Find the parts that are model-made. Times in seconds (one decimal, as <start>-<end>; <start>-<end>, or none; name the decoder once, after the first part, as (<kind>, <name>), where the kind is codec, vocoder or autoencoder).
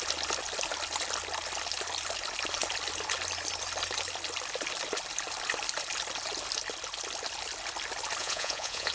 8.2-8.9 (vocoder, Vocos)